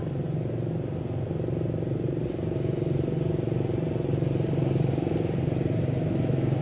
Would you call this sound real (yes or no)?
yes